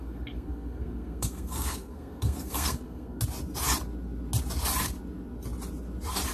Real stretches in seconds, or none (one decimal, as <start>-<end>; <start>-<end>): 3.2-6.3